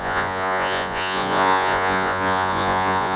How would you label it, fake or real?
fake